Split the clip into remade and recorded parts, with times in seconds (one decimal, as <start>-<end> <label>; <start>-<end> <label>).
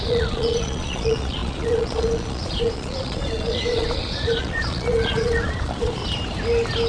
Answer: 0.0-6.0 remade; 6.0-6.9 recorded